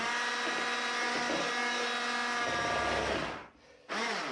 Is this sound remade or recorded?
recorded